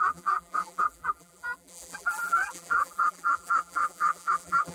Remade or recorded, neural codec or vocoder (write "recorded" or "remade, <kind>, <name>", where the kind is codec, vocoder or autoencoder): remade, vocoder, BigVGAN v2